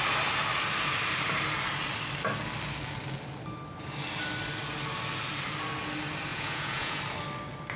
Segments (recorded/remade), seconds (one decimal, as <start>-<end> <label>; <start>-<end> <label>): 0.0-6.3 recorded; 6.3-7.0 remade; 7.0-7.8 recorded